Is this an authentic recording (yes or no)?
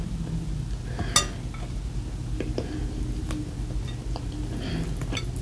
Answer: yes